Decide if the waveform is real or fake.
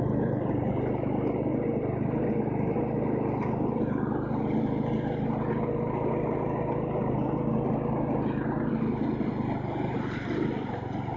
real